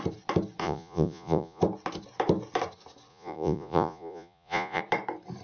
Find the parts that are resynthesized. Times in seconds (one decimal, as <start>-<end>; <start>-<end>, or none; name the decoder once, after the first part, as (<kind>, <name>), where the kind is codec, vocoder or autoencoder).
0.6-1.6 (vocoder, Vocos); 3.1-4.8